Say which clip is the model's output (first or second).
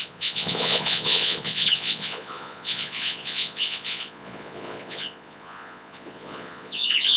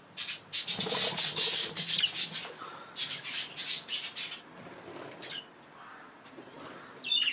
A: first